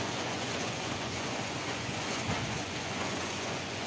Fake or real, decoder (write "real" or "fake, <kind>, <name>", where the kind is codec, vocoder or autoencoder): fake, vocoder, Vocos